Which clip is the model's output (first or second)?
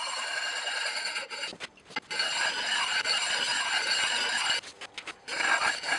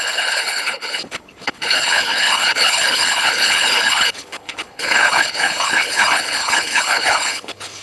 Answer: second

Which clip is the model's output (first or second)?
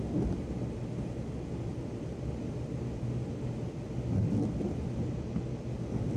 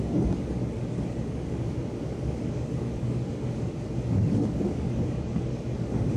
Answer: second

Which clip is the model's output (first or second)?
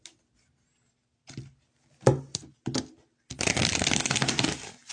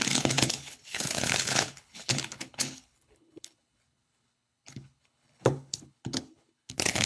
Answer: second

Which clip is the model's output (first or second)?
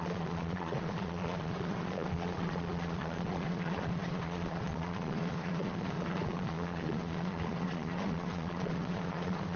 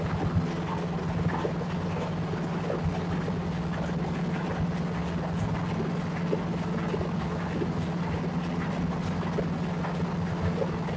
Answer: first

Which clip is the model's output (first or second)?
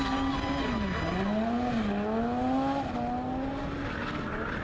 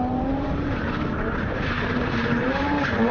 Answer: second